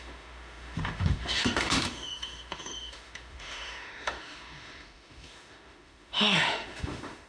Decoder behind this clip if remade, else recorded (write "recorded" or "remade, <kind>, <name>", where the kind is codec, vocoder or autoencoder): remade, autoencoder, DAC-VAE